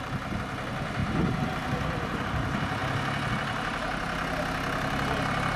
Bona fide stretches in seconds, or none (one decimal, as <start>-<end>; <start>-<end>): 0.0-1.0; 2.2-5.6